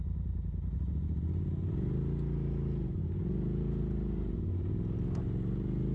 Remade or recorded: recorded